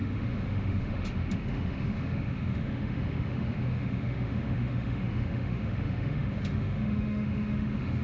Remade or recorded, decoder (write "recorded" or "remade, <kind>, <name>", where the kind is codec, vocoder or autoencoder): remade, autoencoder, DAC-VAE